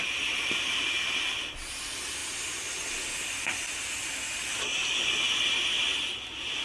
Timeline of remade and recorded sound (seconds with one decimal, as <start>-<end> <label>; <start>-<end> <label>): 0.0-6.6 recorded